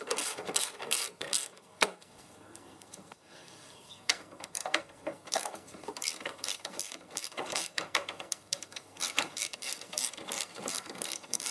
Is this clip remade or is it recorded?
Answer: remade